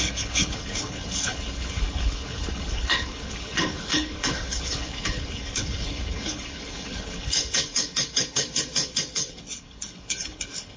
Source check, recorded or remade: remade